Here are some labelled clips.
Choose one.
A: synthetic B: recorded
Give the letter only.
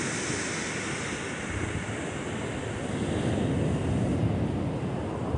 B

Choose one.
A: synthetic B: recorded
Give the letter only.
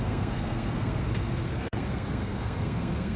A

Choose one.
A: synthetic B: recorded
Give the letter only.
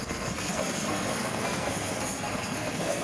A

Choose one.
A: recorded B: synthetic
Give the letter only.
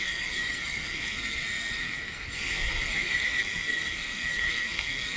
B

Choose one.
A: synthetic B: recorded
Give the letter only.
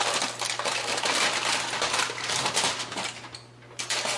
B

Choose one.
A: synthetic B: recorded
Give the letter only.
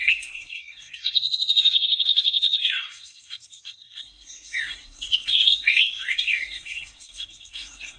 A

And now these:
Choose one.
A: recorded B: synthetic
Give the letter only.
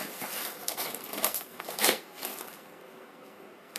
B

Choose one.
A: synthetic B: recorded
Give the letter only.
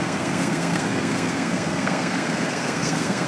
A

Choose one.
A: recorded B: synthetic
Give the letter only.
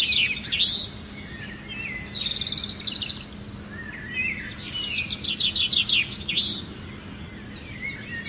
A